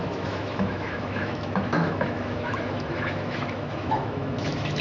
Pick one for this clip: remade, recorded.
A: remade